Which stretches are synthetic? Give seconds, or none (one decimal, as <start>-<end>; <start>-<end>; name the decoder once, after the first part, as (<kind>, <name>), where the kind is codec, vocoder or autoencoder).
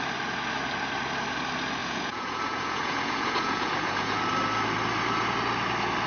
1.8-4.2 (vocoder, Vocos)